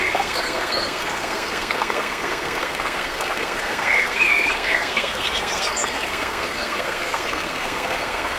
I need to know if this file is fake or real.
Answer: fake